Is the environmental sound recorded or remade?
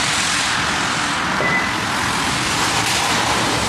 remade